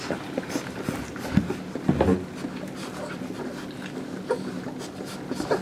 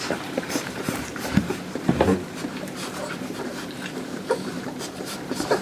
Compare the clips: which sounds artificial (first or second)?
second